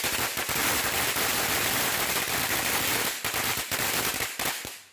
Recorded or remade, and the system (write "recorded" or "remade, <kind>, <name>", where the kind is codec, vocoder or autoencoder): recorded